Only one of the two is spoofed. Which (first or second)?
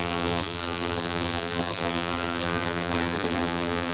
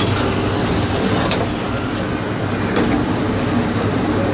first